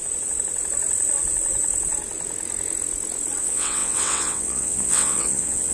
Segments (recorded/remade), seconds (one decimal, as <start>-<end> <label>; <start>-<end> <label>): 0.0-3.4 recorded; 3.4-5.7 remade